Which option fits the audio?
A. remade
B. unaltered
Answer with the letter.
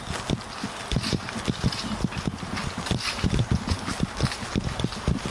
B